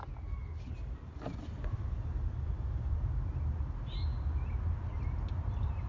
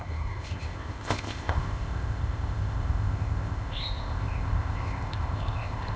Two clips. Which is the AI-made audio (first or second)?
second